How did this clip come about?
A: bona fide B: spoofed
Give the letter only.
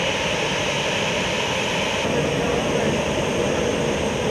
A